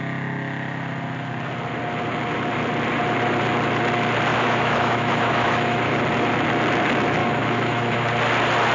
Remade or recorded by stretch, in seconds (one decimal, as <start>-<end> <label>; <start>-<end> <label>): 0.0-4.3 recorded; 4.3-6.0 remade; 6.0-7.2 recorded; 7.2-8.0 remade; 8.0-8.7 recorded